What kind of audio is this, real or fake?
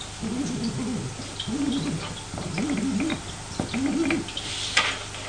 real